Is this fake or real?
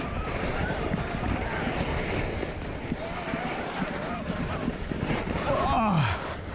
real